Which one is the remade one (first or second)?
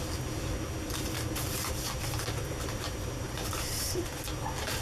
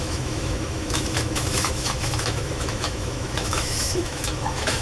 second